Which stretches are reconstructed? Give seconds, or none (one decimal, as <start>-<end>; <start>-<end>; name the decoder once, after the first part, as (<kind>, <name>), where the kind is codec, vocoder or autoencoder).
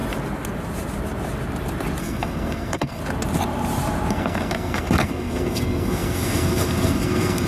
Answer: 2.0-3.0 (codec, SNAC); 4.1-7.5